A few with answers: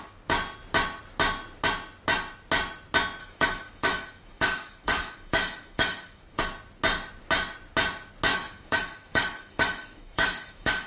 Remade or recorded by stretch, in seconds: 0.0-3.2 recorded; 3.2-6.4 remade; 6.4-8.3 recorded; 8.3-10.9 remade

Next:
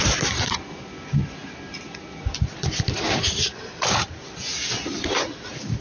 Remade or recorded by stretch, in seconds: 0.0-5.8 recorded

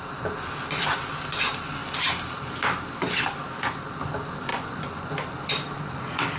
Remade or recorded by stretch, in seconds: 0.0-4.5 recorded; 4.5-5.1 remade; 5.1-6.4 recorded

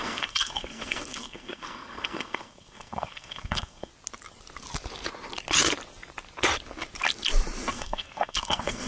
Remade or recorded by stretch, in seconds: 0.0-3.9 remade; 3.9-7.7 recorded; 7.7-8.9 remade